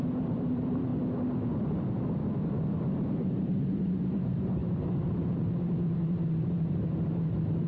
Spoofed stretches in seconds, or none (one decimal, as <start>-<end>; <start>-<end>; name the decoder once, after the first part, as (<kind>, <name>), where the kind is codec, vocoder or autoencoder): 0.0-0.9 (vocoder, BigVGAN v2); 2.8-7.7